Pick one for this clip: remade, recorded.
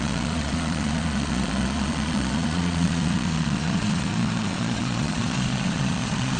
remade